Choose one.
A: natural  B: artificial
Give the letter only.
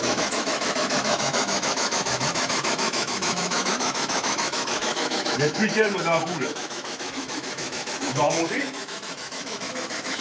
B